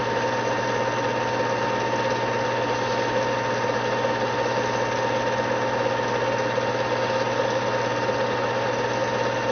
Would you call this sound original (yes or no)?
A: yes